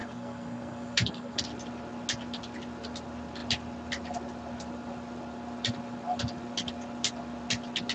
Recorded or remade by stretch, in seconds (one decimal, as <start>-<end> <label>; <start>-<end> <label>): 0.0-1.4 remade; 1.4-7.9 recorded